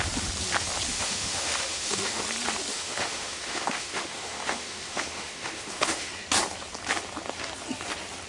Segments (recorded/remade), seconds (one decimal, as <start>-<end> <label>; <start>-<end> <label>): 0.0-0.9 recorded; 0.9-2.2 remade; 2.2-2.7 recorded; 2.7-6.1 remade; 6.1-8.3 recorded